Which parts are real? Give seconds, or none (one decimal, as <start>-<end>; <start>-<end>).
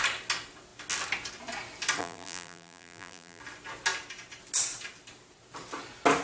0.0-2.0; 3.4-6.2